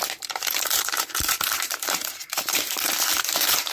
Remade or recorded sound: remade